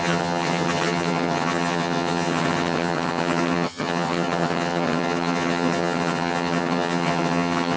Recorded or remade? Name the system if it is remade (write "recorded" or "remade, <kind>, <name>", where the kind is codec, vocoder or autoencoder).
remade, vocoder, HiFi-GAN